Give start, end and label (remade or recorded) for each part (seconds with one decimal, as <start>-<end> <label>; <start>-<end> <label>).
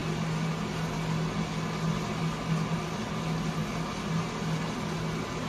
0.0-5.5 recorded